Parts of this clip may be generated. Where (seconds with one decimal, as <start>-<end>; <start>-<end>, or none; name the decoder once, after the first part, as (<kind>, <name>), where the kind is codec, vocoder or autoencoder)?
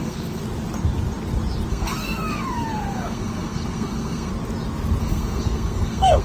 0.0-0.4 (codec, SNAC); 1.7-4.3; 5.0-6.2